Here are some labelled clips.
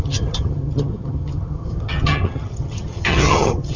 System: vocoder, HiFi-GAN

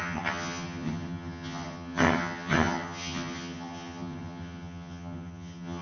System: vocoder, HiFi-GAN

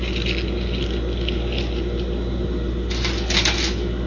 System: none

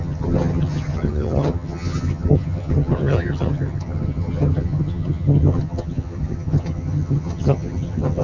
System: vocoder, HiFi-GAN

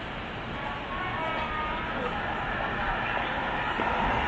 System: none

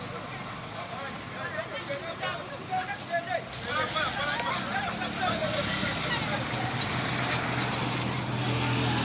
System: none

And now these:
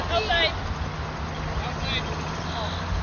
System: none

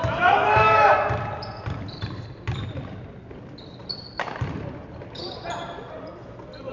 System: none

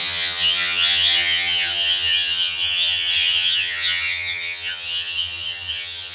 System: vocoder, HiFi-GAN